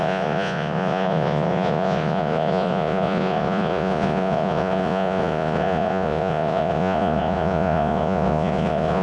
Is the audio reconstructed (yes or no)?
yes